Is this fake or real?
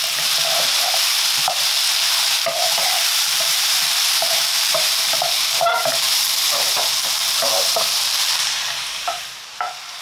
fake